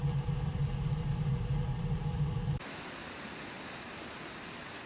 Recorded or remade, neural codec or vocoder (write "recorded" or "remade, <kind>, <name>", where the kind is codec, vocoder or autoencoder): recorded